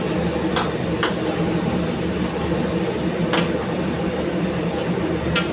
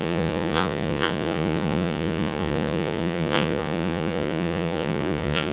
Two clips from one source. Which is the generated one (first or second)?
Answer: second